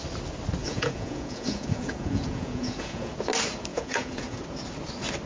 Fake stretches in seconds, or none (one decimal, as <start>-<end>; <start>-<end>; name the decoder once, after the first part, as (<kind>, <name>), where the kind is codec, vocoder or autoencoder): 0.6-3.1 (vocoder, Vocos); 3.7-4.4